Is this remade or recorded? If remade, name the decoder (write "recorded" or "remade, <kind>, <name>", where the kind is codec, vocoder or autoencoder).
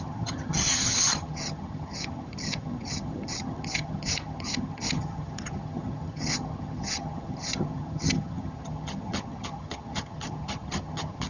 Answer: remade, vocoder, HiFi-GAN